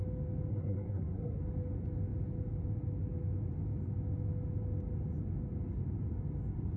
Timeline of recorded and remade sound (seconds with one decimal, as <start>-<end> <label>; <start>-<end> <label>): 0.0-0.5 recorded; 0.5-1.4 remade; 1.4-6.8 recorded